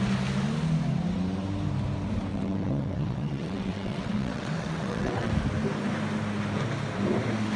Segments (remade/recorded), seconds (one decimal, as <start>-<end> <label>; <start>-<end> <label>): 0.0-2.3 recorded; 2.3-5.3 remade; 5.3-7.6 recorded